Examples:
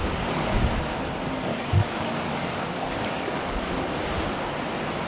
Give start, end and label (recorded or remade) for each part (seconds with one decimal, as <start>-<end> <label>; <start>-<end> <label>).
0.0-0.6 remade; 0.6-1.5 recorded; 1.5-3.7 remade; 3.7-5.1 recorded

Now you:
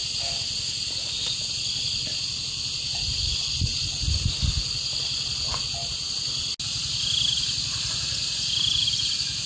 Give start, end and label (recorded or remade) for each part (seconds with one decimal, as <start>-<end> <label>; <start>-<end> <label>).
0.0-9.5 recorded

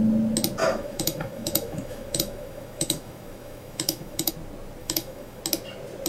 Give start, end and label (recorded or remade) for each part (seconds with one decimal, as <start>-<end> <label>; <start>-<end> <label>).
0.0-0.6 recorded; 0.6-4.3 remade; 4.3-4.8 recorded; 4.8-5.4 remade; 5.4-6.1 recorded

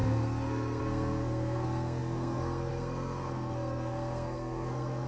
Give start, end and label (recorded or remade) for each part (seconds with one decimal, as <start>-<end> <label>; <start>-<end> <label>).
0.0-5.1 remade

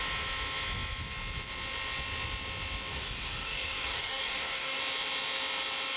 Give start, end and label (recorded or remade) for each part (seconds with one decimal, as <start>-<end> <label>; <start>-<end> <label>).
0.0-2.9 recorded; 2.9-4.8 remade; 4.8-6.0 recorded

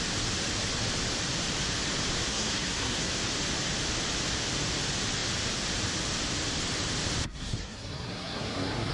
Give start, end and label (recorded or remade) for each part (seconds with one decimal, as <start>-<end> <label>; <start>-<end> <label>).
0.0-2.3 recorded; 2.3-3.1 remade; 3.1-7.2 recorded; 7.2-8.9 remade

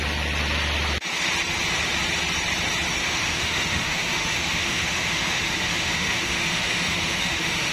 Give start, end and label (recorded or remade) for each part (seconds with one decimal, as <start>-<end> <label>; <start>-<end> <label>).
0.0-3.0 recorded; 3.0-7.7 remade

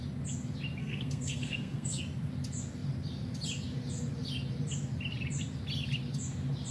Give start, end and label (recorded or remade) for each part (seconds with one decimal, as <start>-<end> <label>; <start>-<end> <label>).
0.0-0.8 recorded; 0.8-2.0 remade; 2.0-6.7 recorded